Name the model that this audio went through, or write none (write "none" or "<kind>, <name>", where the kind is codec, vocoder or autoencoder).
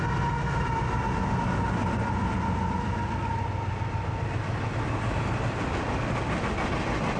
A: none